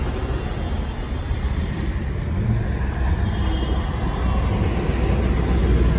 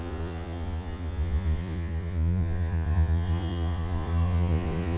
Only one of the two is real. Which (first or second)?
first